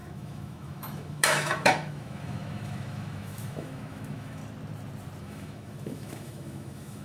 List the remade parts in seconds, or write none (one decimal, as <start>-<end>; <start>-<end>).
0.0-4.4; 5.2-7.0